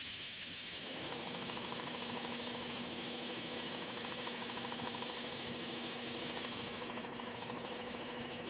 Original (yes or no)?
no